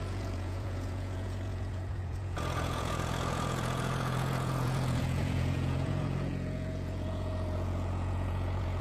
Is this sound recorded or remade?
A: remade